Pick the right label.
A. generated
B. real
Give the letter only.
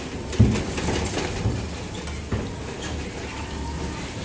B